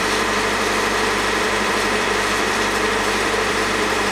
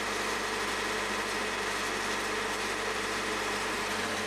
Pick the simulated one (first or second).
first